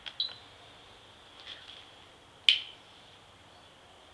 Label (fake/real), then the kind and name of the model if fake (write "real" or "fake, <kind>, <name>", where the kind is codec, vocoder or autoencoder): real